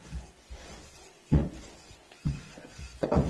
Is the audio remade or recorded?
remade